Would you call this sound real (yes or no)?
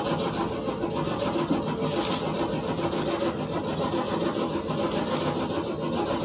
yes